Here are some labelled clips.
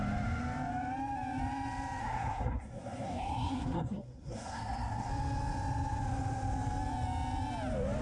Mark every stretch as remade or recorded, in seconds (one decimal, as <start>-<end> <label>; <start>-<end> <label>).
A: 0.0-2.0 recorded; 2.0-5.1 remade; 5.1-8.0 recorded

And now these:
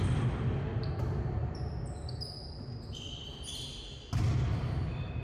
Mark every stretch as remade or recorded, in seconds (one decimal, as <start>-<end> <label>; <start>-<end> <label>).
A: 0.0-5.2 recorded

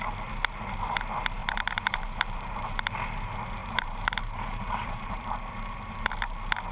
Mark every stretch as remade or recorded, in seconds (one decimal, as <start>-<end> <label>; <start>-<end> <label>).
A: 0.0-1.4 recorded; 1.4-2.8 remade; 2.8-3.6 recorded; 3.6-6.1 remade; 6.1-6.7 recorded

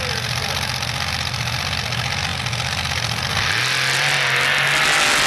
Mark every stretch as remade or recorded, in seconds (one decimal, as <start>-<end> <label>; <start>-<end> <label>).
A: 0.0-5.3 recorded

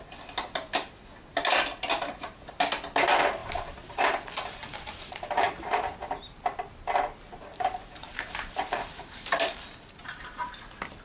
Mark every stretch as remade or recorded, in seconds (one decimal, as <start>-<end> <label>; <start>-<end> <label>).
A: 0.0-3.4 recorded; 3.4-6.4 remade; 6.4-7.5 recorded; 7.5-10.5 remade; 10.5-11.0 recorded

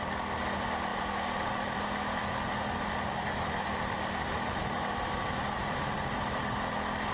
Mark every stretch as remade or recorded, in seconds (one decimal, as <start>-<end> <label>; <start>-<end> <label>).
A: 0.0-7.1 recorded